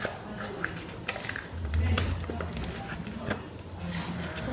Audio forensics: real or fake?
real